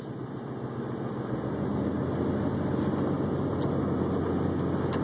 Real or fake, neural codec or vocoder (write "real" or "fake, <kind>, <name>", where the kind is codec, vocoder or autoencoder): real